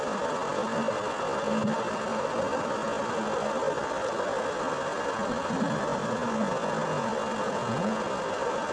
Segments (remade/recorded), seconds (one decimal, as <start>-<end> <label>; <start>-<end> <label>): 0.0-7.4 recorded; 7.4-8.1 remade; 8.1-8.7 recorded